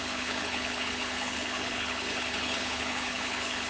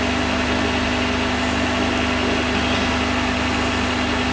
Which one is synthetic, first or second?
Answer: first